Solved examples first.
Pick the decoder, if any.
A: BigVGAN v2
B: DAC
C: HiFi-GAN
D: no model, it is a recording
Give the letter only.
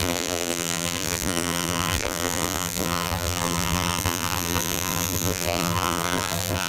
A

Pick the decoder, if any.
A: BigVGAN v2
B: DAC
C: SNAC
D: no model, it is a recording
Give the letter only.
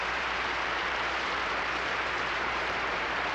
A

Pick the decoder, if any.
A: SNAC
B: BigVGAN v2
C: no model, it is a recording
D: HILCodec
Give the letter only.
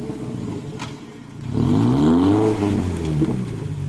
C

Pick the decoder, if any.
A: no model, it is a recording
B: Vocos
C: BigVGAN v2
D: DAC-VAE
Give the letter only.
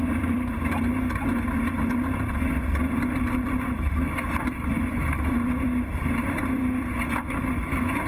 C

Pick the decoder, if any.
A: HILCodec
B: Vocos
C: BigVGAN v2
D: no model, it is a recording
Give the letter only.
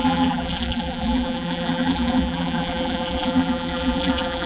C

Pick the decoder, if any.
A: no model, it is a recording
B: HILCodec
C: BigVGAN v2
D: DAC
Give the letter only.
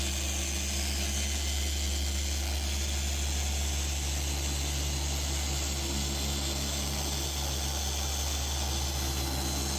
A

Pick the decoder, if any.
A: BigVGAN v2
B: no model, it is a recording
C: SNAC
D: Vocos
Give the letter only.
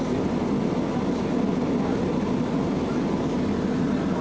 B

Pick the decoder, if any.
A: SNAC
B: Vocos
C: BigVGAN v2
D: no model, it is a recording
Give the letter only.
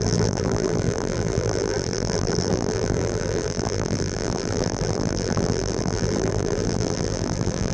C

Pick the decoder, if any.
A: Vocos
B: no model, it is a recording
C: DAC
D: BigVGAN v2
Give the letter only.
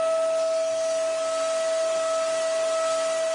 B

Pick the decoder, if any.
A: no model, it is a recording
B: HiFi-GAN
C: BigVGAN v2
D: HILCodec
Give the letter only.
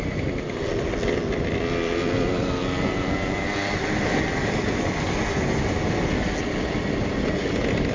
A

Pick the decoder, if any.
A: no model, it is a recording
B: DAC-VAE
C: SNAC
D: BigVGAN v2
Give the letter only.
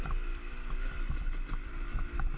A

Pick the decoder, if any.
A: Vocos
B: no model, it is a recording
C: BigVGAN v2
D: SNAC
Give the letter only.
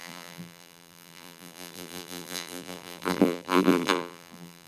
C